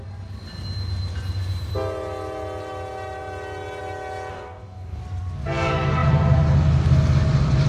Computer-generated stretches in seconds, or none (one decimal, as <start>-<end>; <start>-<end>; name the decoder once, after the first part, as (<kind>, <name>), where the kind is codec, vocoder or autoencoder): 4.3-5.0 (codec, DAC)